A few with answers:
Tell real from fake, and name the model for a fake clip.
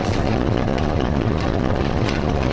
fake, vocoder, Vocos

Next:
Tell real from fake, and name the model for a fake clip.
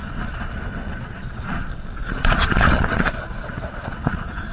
fake, vocoder, Vocos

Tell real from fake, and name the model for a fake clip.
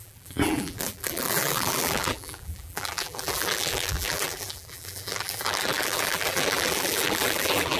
fake, vocoder, BigVGAN v2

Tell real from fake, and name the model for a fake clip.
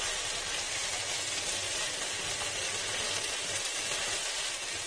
real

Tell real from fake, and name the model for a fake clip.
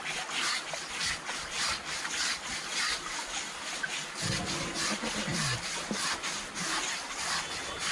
real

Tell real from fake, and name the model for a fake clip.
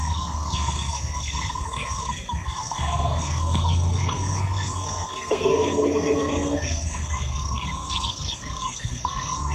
fake, codec, SNAC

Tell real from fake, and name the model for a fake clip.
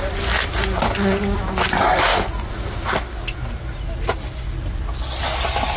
real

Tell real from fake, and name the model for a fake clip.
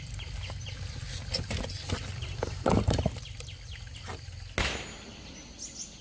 real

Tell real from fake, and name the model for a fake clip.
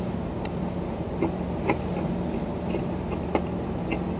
real